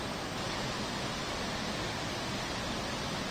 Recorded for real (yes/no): yes